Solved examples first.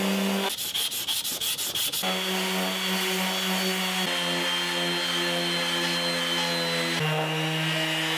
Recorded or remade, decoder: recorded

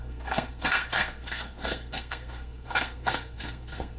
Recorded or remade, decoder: remade, codec, SNAC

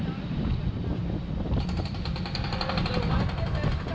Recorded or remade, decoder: recorded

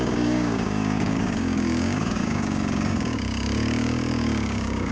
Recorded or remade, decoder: remade, codec, DAC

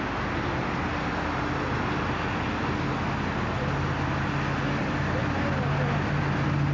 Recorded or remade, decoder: recorded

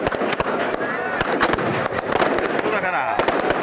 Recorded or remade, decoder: recorded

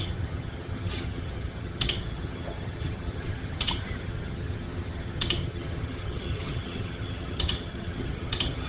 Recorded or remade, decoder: remade, vocoder, HiFi-GAN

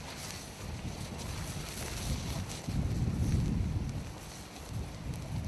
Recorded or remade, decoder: recorded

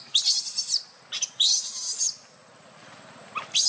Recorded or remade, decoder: recorded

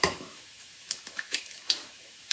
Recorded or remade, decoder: remade, autoencoder, DAC-VAE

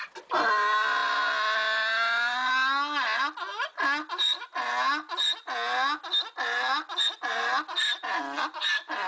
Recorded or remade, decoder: recorded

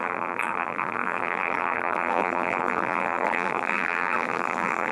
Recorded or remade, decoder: remade, vocoder, BigVGAN v2